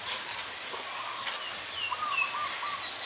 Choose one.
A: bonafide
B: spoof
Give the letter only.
A